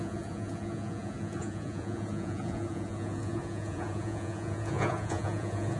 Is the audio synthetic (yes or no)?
yes